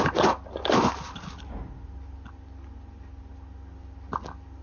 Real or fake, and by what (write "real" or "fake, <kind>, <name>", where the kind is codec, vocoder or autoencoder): real